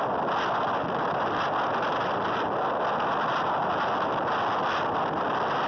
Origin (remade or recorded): recorded